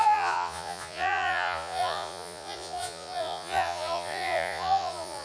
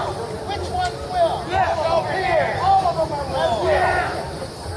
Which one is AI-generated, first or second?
first